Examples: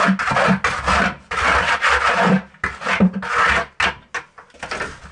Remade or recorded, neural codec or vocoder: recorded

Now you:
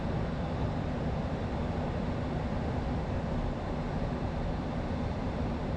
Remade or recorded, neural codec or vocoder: remade, vocoder, BigVGAN v2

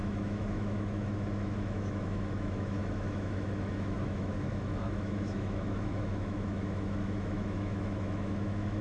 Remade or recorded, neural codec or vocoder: remade, autoencoder, DAC-VAE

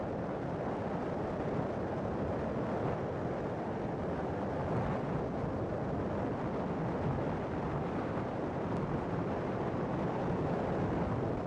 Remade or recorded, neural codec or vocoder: recorded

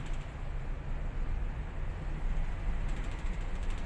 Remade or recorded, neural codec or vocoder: recorded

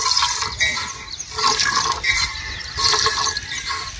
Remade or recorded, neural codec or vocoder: remade, vocoder, BigVGAN v2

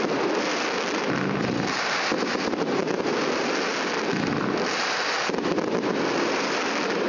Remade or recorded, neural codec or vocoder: recorded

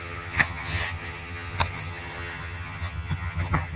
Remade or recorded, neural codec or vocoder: remade, vocoder, HiFi-GAN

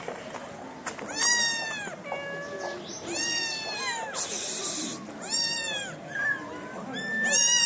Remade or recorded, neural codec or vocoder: recorded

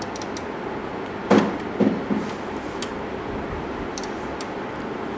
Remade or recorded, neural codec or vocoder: recorded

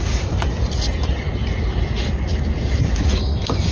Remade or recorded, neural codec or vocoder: recorded